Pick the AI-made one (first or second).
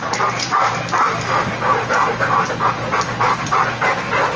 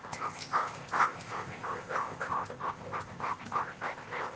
second